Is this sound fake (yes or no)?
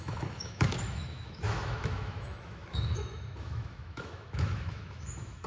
yes